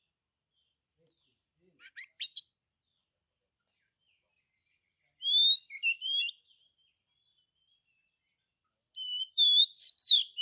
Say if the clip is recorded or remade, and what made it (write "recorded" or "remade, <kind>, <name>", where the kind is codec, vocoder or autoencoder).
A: remade, vocoder, BigVGAN v2